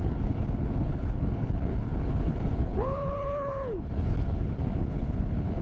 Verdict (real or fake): fake